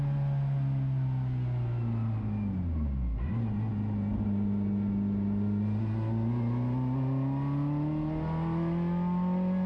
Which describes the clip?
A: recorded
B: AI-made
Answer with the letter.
A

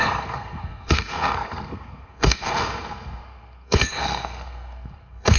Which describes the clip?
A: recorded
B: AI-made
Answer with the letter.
B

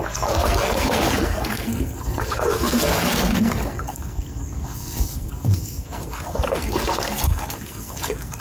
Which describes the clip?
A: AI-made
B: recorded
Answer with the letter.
A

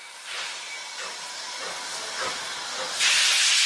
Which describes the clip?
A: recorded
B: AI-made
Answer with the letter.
A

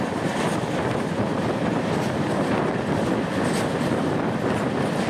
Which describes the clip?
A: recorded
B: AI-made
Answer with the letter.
A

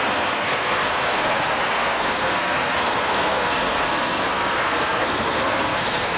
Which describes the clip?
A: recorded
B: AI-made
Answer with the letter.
B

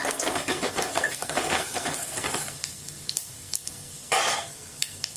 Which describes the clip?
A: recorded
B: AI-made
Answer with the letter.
B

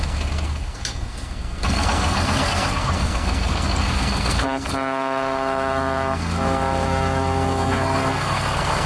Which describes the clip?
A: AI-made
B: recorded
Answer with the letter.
A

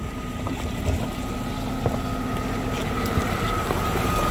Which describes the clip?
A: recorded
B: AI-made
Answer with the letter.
A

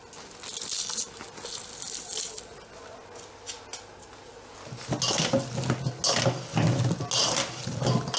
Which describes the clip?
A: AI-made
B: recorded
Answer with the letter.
B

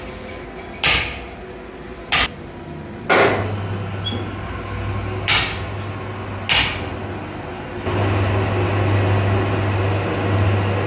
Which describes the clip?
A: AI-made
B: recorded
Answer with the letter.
B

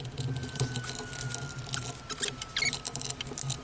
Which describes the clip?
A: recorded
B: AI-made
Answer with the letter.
A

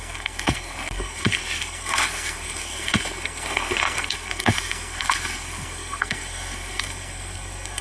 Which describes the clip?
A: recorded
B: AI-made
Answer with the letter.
B